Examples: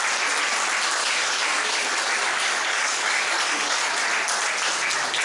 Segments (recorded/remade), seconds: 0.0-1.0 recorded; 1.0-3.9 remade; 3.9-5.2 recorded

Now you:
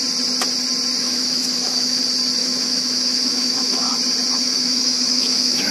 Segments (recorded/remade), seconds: 0.0-1.0 recorded; 1.0-2.0 remade; 2.0-2.4 recorded; 2.4-3.9 remade; 3.9-4.4 recorded; 4.4-5.7 remade

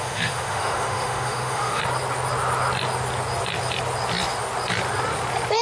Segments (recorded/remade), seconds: 0.0-1.8 remade; 1.8-5.6 recorded

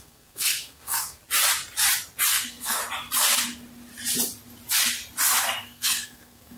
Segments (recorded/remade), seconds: 0.0-1.2 remade; 1.2-2.3 recorded; 2.3-2.8 remade; 2.8-5.6 recorded; 5.6-6.6 remade

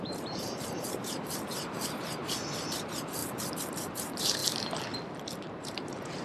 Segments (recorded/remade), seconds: 0.0-2.2 remade; 2.2-2.7 recorded; 2.7-4.4 remade; 4.4-5.4 recorded; 5.4-6.2 remade

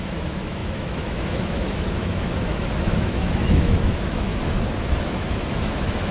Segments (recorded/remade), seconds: 0.0-4.3 remade; 4.3-5.1 recorded; 5.1-6.1 remade